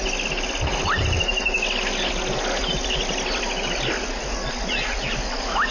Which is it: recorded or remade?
recorded